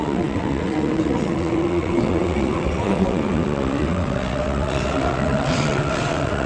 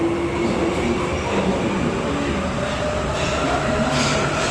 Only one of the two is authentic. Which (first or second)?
second